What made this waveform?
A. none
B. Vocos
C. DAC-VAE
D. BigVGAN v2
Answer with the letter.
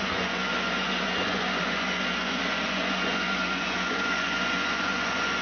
B